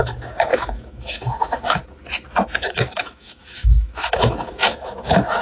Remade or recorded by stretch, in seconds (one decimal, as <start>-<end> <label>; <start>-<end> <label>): 0.0-1.8 remade; 1.8-2.6 recorded; 2.6-5.4 remade